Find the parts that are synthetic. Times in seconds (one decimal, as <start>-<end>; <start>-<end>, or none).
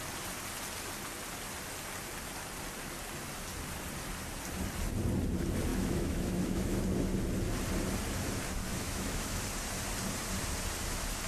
5.7-6.8; 8.7-9.4